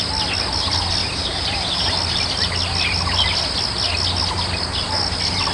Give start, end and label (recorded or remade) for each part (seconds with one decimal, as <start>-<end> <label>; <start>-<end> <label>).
0.0-1.0 recorded; 1.0-1.9 remade; 1.9-5.5 recorded